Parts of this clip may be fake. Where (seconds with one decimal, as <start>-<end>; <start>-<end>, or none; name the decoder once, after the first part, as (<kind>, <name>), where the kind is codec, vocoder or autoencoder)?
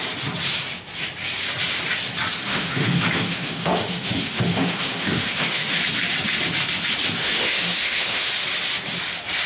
2.5-5.8 (autoencoder, DAC-VAE); 7.2-8.3